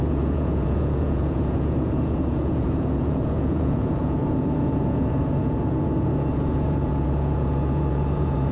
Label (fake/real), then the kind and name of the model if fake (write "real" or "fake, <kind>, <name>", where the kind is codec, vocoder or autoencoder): fake, vocoder, Vocos